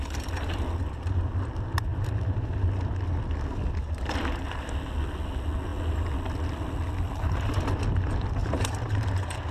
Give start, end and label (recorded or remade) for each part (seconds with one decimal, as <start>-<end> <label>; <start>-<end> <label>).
0.0-8.4 recorded; 8.4-9.5 remade

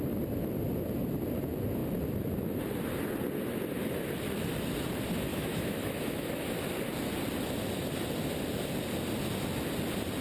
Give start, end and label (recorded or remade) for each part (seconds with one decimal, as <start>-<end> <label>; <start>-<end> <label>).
0.0-5.3 recorded; 5.3-6.6 remade; 6.6-10.2 recorded